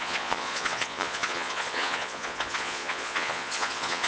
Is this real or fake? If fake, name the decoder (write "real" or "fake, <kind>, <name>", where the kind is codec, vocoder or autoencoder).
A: fake, vocoder, Vocos